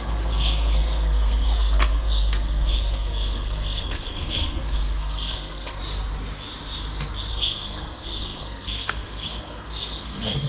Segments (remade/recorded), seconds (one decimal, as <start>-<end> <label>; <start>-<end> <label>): 0.0-5.8 remade; 5.8-7.3 recorded; 7.3-10.5 remade